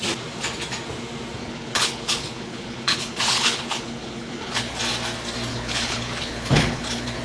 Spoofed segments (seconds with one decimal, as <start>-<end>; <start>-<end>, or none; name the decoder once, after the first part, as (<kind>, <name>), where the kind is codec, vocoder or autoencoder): 1.4-4.8 (codec, HILCodec); 5.5-7.2